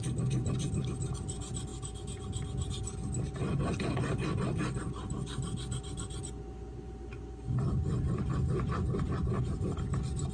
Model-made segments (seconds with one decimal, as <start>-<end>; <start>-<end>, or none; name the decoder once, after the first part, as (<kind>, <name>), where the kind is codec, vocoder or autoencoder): none